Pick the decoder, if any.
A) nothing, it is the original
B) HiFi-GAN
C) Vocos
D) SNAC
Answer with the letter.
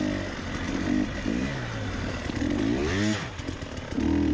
A